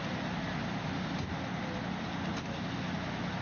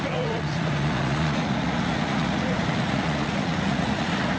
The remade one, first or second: second